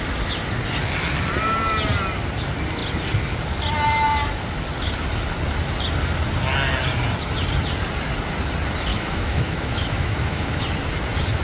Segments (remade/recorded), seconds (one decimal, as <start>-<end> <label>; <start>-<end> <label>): 0.0-8.9 recorded; 8.9-10.6 remade; 10.6-11.4 recorded

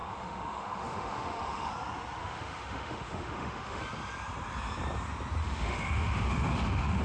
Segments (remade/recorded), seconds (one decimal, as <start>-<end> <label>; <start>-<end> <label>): 0.0-1.7 remade; 1.7-2.2 recorded; 2.2-3.8 remade; 3.8-5.4 recorded; 5.4-7.0 remade

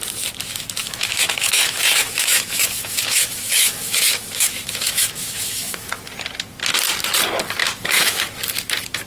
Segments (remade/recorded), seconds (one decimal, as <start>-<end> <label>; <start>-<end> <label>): 0.0-0.8 recorded; 0.8-5.9 remade; 5.9-7.6 recorded; 7.6-8.2 remade; 8.2-9.1 recorded

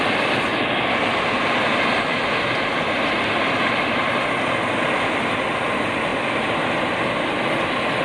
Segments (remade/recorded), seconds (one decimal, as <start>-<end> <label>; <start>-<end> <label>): 0.0-8.0 recorded

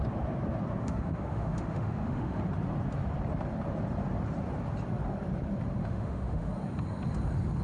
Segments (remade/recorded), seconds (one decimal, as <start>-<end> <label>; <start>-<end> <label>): 0.0-0.8 recorded; 0.8-2.4 remade; 2.4-5.8 recorded; 5.8-6.5 remade; 6.5-7.6 recorded

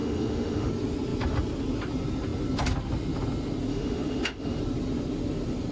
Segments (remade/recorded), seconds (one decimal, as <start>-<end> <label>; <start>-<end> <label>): 0.0-0.7 remade; 0.7-3.7 recorded; 3.7-4.6 remade; 4.6-5.7 recorded

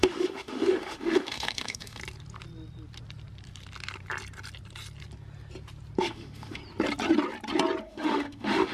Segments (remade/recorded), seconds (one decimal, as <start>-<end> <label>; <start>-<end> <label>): 0.0-2.0 remade; 2.0-6.0 recorded; 6.0-6.6 remade; 6.6-7.8 recorded; 7.8-8.7 remade

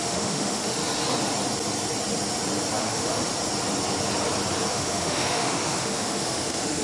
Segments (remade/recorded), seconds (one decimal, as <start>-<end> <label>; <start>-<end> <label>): 0.0-0.8 remade; 0.8-2.8 recorded; 2.8-3.3 remade; 3.3-4.7 recorded; 4.7-6.8 remade